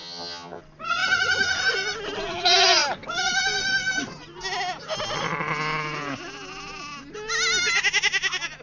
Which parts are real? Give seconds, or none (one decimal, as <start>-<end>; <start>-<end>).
0.6-8.6